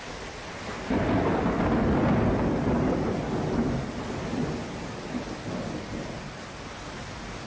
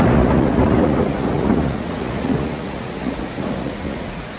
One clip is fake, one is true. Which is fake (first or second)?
second